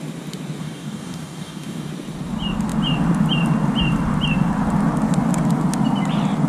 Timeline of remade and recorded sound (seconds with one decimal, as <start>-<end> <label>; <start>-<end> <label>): 0.0-0.6 recorded; 0.6-1.9 remade; 1.9-6.5 recorded